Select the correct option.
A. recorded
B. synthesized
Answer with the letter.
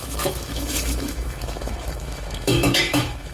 B